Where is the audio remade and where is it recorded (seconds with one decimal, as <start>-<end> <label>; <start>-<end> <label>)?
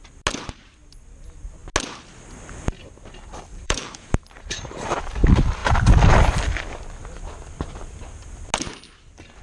0.0-3.5 recorded; 3.5-5.1 remade; 5.1-9.4 recorded